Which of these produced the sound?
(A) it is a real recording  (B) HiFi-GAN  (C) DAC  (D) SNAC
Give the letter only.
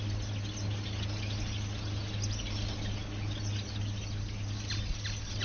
A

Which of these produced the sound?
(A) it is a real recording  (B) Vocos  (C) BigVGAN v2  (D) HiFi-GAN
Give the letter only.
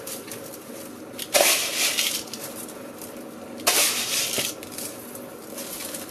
C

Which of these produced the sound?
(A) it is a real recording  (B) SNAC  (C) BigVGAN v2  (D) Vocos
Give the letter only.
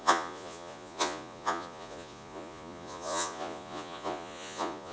D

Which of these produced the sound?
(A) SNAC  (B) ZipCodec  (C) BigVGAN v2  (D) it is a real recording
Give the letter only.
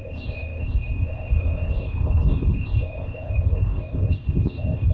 B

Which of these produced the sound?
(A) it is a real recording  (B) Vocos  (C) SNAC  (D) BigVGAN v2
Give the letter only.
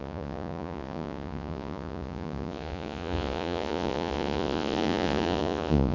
B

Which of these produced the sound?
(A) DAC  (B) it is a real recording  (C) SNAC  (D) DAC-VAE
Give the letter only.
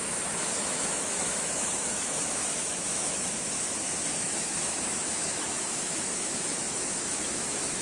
D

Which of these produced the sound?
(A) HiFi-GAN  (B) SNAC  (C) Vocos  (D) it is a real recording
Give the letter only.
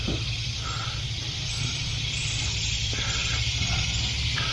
D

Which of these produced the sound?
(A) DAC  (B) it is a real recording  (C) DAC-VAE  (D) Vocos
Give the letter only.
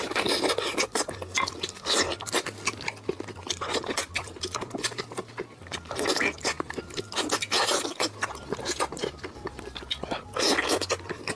B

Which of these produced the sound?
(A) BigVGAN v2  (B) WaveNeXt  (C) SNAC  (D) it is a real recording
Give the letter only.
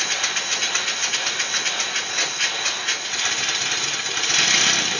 D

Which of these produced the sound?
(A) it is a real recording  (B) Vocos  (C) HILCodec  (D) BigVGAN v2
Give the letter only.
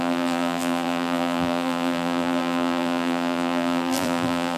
D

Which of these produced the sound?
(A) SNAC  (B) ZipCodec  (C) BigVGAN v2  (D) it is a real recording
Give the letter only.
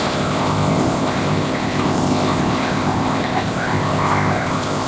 B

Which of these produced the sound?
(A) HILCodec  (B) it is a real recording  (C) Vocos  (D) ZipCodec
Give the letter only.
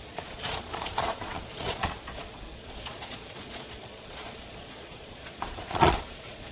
C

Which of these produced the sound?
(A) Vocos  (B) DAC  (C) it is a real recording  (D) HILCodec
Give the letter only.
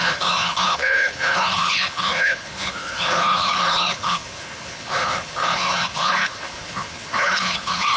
D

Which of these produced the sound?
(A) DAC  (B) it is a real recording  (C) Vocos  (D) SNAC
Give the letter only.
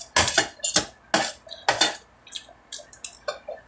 B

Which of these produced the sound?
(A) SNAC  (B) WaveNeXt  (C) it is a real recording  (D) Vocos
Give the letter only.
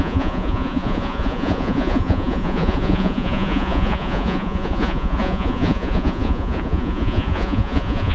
D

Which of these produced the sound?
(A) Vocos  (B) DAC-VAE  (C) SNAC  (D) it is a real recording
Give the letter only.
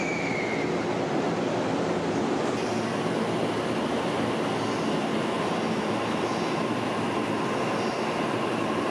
D